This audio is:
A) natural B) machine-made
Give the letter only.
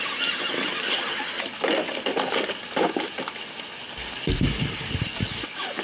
A